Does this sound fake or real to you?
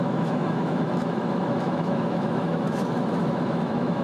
fake